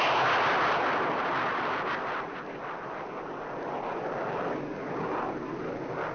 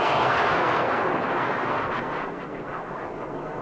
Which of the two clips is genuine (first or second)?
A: first